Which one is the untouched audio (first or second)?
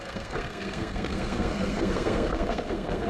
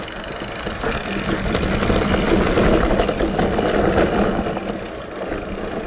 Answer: second